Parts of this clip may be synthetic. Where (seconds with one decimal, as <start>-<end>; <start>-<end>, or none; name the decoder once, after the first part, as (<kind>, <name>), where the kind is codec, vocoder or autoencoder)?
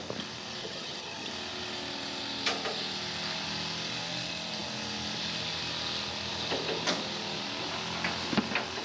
0.6-1.3 (vocoder, HiFi-GAN)